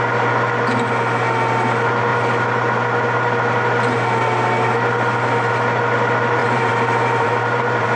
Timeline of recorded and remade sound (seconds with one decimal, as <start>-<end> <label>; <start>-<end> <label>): 0.0-6.4 recorded; 6.4-8.0 remade